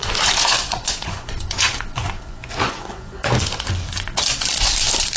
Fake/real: fake